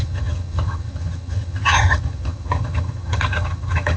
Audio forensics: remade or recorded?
remade